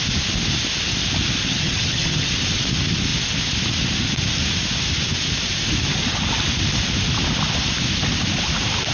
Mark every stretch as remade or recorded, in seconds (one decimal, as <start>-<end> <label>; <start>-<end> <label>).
0.0-1.5 recorded; 1.5-2.3 remade; 2.3-8.9 recorded